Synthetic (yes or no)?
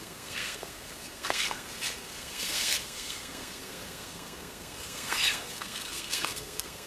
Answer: yes